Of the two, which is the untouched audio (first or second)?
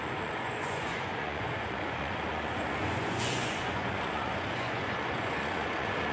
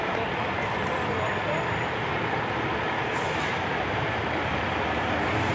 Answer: second